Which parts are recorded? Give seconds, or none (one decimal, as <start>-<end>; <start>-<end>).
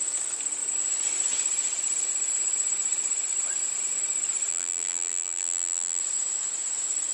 0.0-4.5; 6.0-7.1